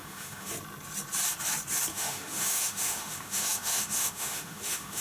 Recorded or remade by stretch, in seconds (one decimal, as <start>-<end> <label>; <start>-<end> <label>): 0.0-0.5 remade; 0.5-1.9 recorded; 1.9-5.0 remade